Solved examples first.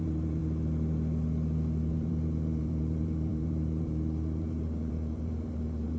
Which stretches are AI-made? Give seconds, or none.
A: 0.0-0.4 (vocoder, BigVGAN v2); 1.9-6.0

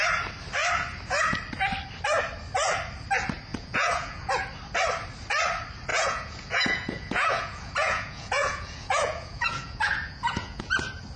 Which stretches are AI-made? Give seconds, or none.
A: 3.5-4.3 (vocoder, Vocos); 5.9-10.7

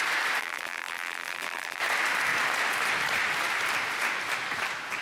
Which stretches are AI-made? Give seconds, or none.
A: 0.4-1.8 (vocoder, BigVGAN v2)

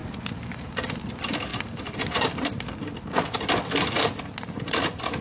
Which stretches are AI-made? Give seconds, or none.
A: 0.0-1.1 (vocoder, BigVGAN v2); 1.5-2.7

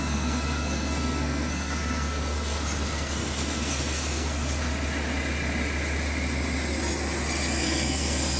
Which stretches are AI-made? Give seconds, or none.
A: 0.0-4.6 (codec, SNAC); 7.6-8.4

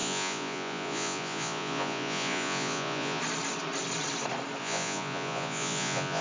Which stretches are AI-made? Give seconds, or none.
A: 0.0-3.2 (vocoder, Vocos); 4.6-6.2

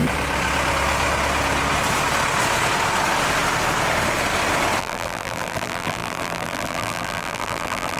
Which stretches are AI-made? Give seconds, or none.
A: 4.8-8.0 (vocoder, BigVGAN v2)

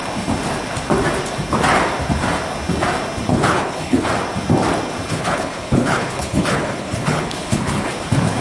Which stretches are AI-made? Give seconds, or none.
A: 3.3-4.1 (codec, HILCodec); 5.1-7.9